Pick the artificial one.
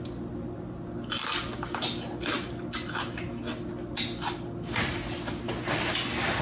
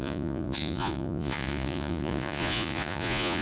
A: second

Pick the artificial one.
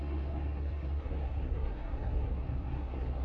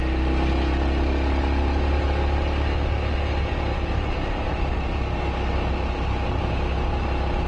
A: first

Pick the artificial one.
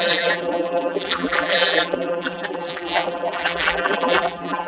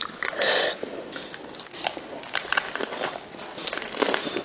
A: first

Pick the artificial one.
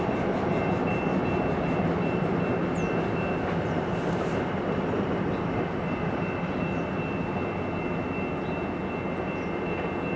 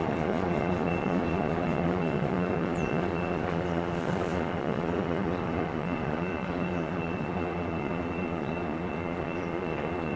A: second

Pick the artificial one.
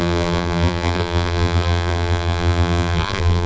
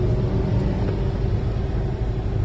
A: first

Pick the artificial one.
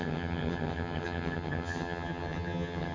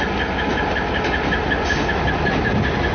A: first